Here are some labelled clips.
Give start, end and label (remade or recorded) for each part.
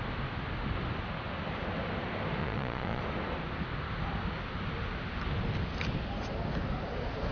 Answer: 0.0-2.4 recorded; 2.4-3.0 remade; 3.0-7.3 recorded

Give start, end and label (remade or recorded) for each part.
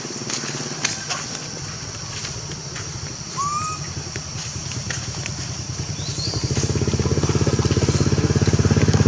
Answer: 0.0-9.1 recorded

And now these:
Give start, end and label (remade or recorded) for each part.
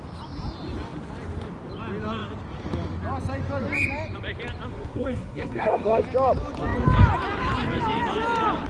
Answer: 0.0-4.7 recorded; 4.7-6.0 remade; 6.0-8.7 recorded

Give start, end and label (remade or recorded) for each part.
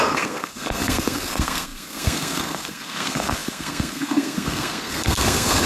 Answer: 0.0-5.7 remade